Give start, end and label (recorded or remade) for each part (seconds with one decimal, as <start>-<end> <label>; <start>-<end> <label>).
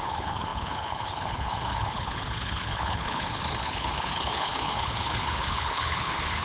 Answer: 0.0-6.4 remade